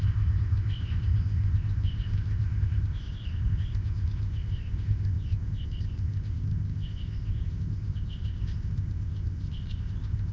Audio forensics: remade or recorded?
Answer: remade